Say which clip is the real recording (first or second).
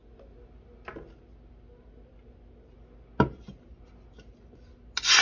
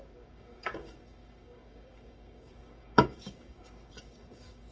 first